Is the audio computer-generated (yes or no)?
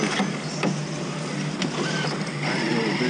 no